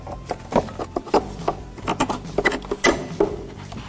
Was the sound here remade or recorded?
recorded